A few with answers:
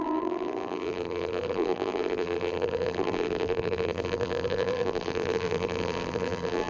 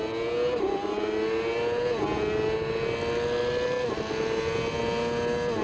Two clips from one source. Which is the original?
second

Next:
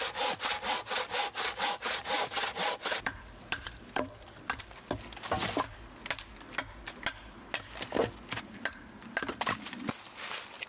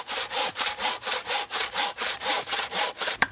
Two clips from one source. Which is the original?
first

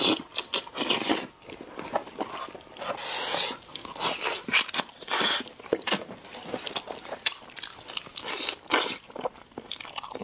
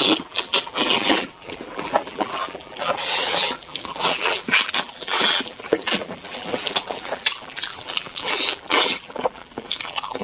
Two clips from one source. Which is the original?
first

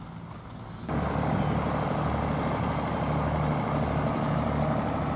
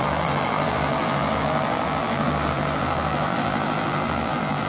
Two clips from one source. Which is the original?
first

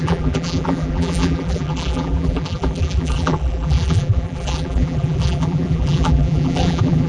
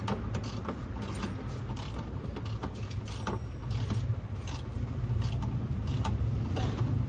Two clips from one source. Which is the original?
second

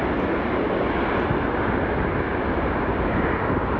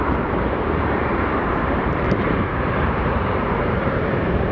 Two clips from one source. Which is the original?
first